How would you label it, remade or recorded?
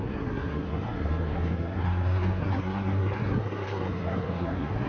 remade